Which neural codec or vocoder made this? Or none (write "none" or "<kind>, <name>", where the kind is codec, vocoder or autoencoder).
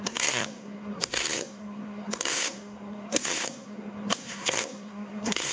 codec, SNAC